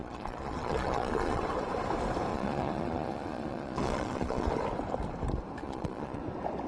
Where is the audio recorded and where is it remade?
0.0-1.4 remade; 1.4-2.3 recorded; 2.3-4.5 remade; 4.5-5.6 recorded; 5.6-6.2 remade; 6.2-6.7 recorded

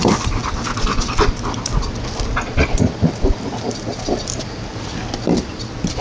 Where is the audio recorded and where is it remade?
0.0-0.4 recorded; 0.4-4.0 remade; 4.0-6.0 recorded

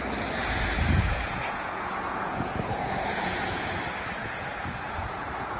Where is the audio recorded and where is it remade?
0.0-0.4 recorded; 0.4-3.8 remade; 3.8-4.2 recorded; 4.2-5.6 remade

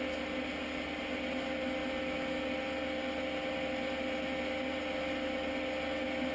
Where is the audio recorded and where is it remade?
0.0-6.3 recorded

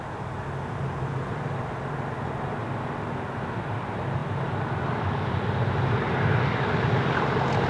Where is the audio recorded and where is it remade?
0.0-7.7 recorded